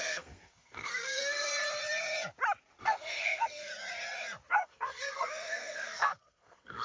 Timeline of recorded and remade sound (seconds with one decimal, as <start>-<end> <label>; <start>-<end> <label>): 0.0-1.5 remade; 1.5-2.8 recorded; 2.8-3.7 remade; 3.7-4.5 recorded; 4.5-6.8 remade